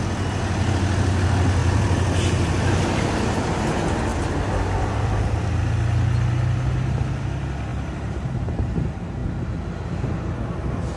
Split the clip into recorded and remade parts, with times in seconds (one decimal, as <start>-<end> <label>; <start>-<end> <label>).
0.0-1.6 recorded; 1.6-3.0 remade; 3.0-4.1 recorded; 4.1-5.4 remade; 5.4-7.7 recorded; 7.7-8.5 remade; 8.5-11.0 recorded